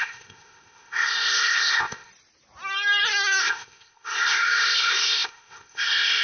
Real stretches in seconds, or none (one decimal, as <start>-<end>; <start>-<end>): 2.1-3.4